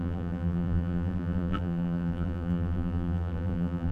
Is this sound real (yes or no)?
no